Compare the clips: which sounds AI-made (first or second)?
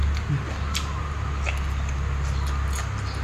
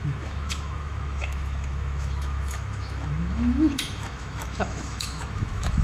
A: second